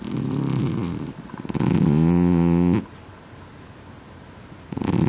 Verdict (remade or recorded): recorded